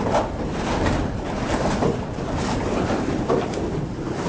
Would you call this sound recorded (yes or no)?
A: no